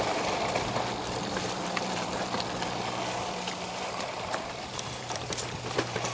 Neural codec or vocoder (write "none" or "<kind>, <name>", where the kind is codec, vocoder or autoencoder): vocoder, BigVGAN v2